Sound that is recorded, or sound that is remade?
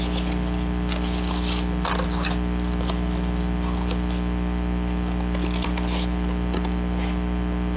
recorded